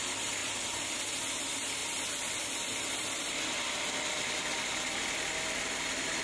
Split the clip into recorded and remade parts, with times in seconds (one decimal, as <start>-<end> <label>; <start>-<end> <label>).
0.0-0.4 recorded; 0.4-0.9 remade; 0.9-6.2 recorded

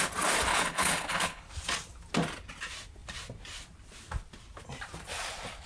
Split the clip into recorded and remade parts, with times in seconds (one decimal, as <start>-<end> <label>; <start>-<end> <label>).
0.0-0.5 recorded; 0.5-1.5 remade; 1.5-5.7 recorded